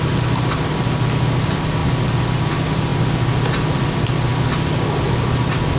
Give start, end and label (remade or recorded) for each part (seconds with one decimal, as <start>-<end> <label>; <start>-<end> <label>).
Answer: 0.0-5.8 recorded